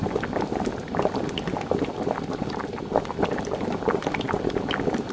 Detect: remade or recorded recorded